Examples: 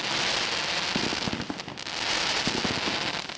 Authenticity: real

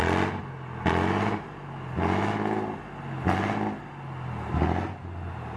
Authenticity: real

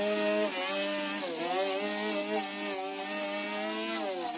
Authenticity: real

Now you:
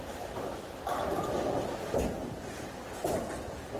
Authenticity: real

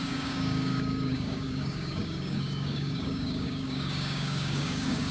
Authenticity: fake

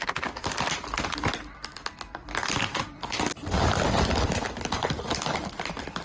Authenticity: real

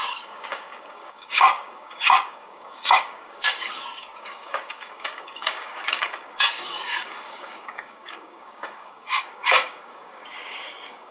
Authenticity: fake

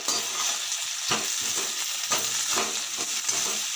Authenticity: real